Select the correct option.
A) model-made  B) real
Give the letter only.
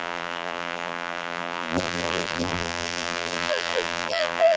A